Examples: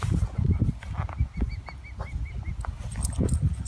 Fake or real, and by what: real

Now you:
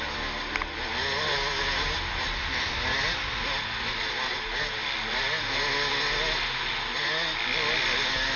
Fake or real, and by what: real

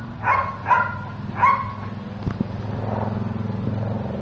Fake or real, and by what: real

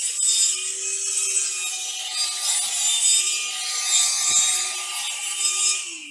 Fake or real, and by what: real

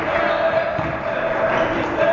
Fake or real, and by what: real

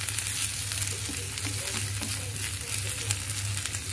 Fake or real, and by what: real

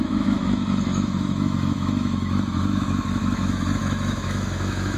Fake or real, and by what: fake, autoencoder, DAC-VAE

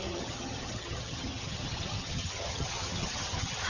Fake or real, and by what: fake, vocoder, HiFi-GAN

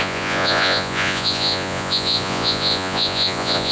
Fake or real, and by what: fake, vocoder, Vocos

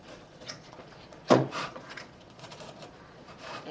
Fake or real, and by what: fake, vocoder, Vocos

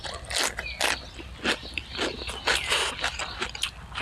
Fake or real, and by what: real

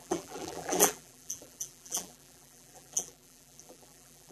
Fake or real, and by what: fake, vocoder, BigVGAN v2